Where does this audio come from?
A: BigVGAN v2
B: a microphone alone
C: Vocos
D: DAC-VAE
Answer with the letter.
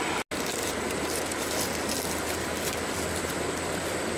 B